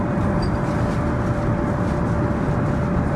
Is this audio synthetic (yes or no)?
no